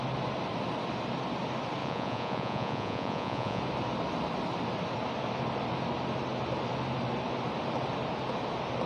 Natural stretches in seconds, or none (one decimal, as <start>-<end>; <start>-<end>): 0.0-1.8; 3.6-8.9